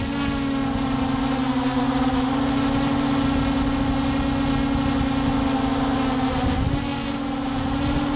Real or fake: real